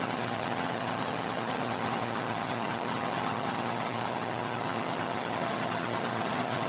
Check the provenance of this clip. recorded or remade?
remade